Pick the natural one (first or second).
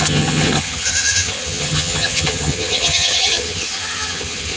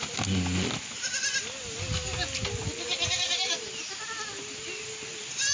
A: second